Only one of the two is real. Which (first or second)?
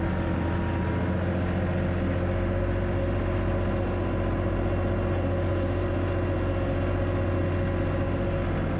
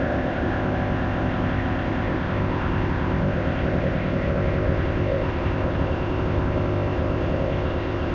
first